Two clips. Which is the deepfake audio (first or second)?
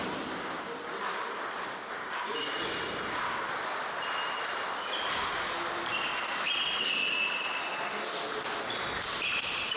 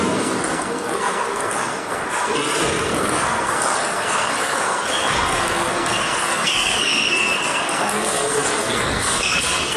second